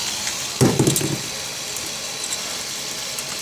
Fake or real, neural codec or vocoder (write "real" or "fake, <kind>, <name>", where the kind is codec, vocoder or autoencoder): real